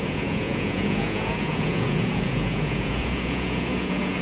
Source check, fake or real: fake